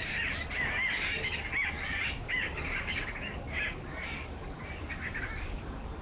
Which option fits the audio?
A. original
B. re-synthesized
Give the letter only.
B